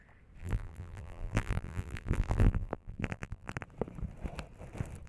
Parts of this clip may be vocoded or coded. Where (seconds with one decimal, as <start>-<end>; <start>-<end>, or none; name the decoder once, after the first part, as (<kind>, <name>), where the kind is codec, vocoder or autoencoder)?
0.4-3.5 (vocoder, BigVGAN v2)

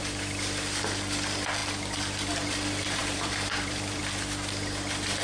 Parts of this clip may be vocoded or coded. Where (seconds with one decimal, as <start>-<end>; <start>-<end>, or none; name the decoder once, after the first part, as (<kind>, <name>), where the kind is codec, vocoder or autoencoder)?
3.0-4.0 (vocoder, BigVGAN v2)

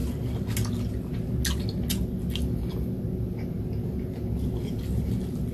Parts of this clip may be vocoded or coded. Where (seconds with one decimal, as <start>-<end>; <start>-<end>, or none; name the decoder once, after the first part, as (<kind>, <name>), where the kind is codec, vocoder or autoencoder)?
none

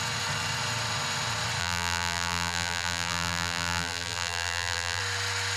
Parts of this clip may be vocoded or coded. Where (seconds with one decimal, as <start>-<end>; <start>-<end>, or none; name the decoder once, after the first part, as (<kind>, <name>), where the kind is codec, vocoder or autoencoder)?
1.6-5.0 (vocoder, BigVGAN v2)

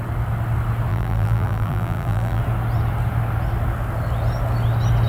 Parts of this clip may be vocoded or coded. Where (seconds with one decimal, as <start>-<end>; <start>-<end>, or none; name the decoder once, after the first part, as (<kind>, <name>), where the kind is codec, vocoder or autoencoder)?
0.9-2.4 (vocoder, BigVGAN v2)

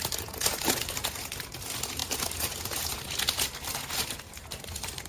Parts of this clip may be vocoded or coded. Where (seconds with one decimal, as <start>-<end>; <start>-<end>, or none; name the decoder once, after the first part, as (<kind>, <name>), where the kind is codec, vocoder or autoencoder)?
none